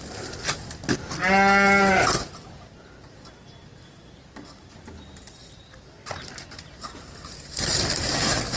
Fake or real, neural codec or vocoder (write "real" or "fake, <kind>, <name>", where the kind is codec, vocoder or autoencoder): real